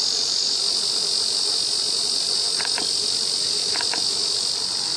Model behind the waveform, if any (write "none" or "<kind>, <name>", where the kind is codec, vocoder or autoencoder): none